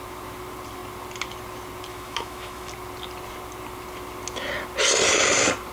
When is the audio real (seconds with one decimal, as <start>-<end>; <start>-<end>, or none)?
0.0-1.9; 2.7-5.7